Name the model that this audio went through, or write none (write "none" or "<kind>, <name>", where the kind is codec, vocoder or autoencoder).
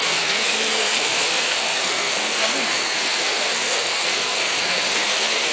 codec, SNAC